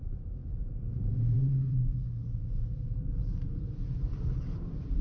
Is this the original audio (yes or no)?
no